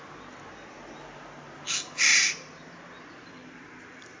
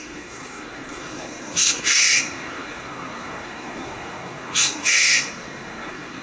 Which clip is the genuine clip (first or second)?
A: first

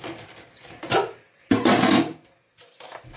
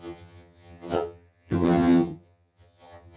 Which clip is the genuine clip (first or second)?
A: first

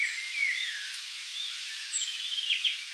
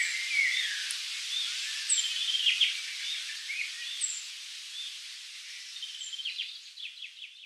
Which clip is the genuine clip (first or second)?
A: second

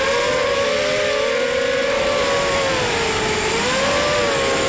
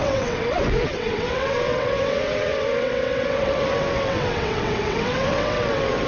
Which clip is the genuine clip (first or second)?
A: first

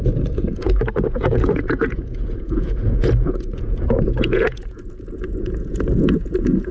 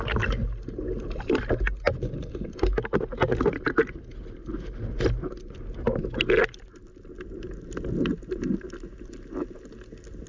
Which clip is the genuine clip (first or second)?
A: second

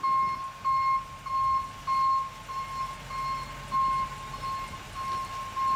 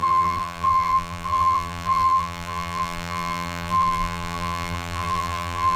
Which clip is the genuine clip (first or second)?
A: first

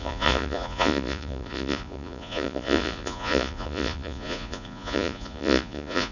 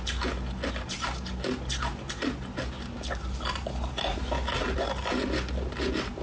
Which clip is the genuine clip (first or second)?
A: second